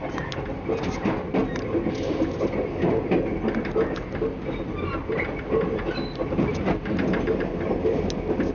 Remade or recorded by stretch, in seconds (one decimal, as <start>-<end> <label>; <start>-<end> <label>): 0.0-8.5 recorded